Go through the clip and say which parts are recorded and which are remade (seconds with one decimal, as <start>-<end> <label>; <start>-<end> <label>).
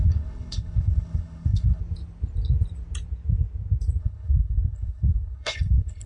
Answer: 0.0-1.8 remade; 1.8-4.0 recorded; 4.0-6.1 remade